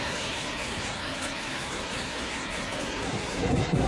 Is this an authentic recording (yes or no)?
no